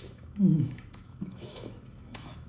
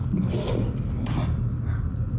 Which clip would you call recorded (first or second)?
second